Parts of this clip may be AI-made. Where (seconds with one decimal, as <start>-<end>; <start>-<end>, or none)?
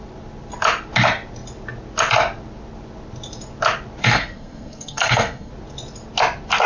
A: 4.0-5.5